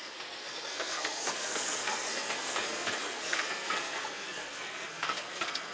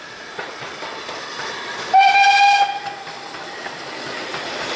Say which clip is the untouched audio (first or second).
second